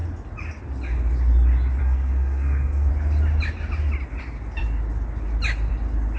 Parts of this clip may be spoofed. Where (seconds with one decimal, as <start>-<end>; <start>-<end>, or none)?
1.8-2.9